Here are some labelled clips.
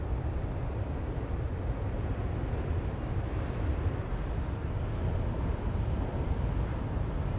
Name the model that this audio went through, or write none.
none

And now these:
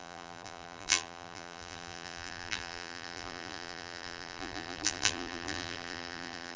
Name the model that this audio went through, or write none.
vocoder, BigVGAN v2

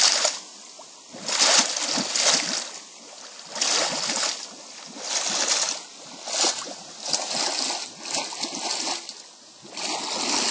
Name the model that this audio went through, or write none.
none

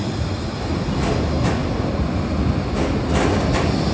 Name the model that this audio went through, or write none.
none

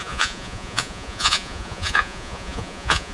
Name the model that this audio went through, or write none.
vocoder, Vocos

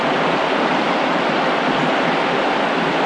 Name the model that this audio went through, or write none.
none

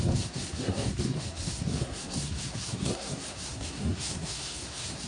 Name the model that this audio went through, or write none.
codec, SNAC